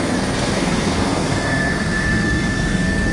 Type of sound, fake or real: fake